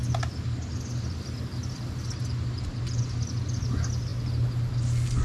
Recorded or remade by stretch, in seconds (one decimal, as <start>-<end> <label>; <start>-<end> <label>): 0.0-5.2 recorded